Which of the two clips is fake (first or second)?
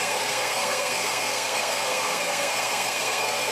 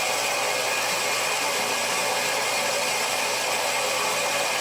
first